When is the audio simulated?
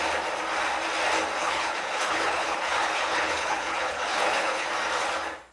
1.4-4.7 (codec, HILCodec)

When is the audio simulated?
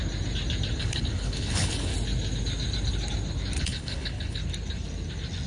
0.8-1.9 (codec, HILCodec); 3.6-4.4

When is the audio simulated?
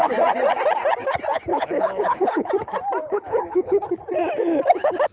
1.5-2.5 (codec, HILCodec); 3.0-3.8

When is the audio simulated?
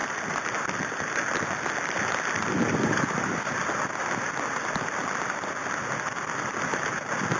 none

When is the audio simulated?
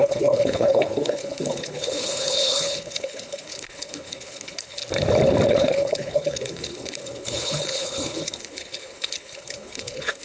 0.0-4.8 (codec, HILCodec); 5.5-10.2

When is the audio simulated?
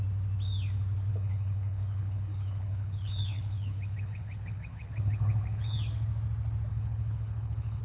1.1-5.8 (codec, HILCodec); 6.7-7.8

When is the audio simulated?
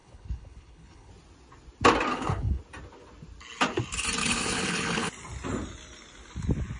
0.0-1.1 (codec, HILCodec); 2.1-2.6; 4.2-5.1